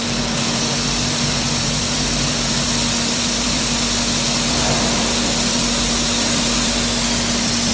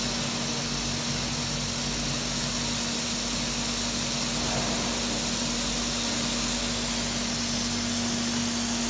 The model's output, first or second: first